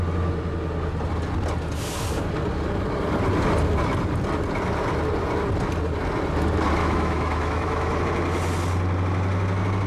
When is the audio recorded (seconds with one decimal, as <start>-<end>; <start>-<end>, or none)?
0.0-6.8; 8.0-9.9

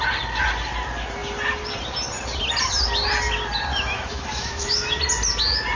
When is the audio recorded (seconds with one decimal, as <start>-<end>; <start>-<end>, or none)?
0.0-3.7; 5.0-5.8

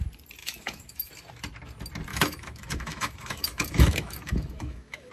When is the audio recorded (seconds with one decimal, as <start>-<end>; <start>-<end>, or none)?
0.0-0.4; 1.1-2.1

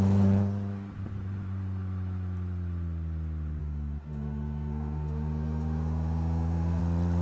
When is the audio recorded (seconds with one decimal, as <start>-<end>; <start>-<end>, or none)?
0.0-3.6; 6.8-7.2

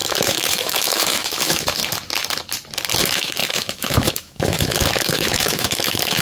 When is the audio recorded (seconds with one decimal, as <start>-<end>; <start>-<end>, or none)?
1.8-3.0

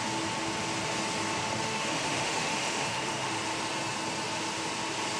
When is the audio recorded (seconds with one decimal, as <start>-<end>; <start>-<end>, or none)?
0.0-1.4; 3.3-5.2

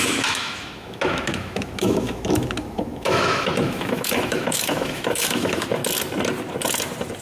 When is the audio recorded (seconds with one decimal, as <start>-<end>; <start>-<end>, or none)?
5.8-7.2

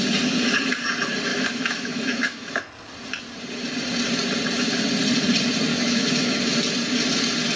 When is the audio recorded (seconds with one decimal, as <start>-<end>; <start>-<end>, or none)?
0.0-1.3; 2.7-5.7; 6.4-7.6